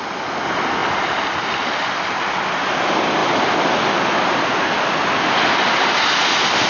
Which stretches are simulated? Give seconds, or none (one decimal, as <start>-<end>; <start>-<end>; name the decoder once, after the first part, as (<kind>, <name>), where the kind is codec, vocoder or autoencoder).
none